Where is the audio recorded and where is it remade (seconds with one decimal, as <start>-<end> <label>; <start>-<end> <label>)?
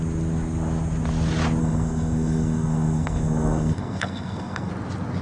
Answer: 0.0-1.6 recorded; 1.6-4.7 remade; 4.7-5.2 recorded